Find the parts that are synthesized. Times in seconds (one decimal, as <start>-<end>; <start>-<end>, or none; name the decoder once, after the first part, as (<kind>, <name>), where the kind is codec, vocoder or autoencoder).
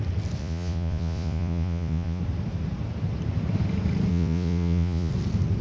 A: 0.4-2.2 (vocoder, Vocos); 4.1-5.1